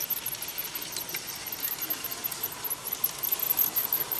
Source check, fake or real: real